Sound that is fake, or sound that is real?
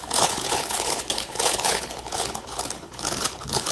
fake